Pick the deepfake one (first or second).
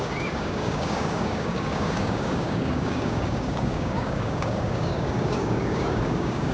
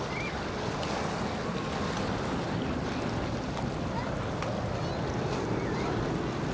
first